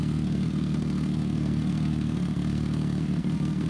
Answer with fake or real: fake